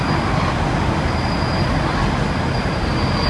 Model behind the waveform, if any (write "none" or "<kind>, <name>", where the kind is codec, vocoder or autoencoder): none